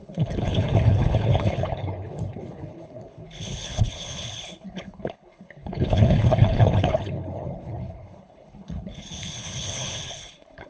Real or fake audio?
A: fake